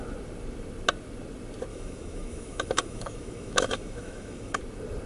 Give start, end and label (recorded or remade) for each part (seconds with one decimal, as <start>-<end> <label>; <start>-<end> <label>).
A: 0.0-1.7 recorded; 1.7-4.6 remade; 4.6-5.1 recorded